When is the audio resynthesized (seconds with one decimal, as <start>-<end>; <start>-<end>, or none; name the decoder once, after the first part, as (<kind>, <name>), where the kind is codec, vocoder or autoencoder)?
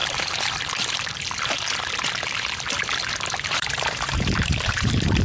3.1-5.2 (vocoder, BigVGAN v2)